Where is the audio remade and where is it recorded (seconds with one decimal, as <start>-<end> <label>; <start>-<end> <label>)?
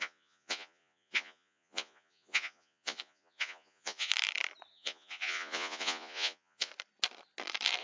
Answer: 0.0-4.1 remade; 4.1-4.7 recorded; 4.7-6.7 remade; 6.7-7.8 recorded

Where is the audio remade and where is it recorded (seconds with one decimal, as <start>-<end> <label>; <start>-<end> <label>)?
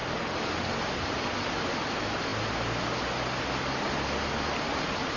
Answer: 0.0-5.2 recorded